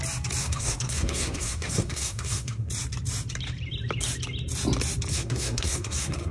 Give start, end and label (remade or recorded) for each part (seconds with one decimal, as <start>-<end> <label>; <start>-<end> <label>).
0.0-0.4 recorded; 0.4-2.7 remade; 2.7-5.1 recorded; 5.1-6.3 remade